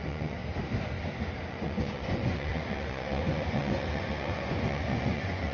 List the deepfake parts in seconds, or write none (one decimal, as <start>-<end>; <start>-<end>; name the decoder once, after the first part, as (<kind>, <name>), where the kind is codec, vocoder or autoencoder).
0.0-0.4 (vocoder, Vocos); 1.5-5.5

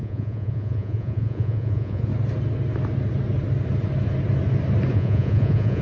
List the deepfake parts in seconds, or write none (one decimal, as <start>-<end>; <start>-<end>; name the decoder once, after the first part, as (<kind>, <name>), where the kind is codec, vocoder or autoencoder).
0.0-2.1 (vocoder, Vocos); 4.9-5.8

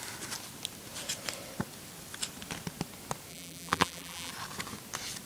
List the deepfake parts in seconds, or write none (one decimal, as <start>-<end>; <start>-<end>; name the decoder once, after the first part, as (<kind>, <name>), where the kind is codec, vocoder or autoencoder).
3.3-4.3 (vocoder, BigVGAN v2)

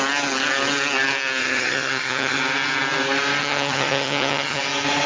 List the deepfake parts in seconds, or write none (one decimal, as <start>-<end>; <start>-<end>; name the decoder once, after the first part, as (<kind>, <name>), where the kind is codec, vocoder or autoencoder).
1.4-2.4 (vocoder, HiFi-GAN); 3.4-4.6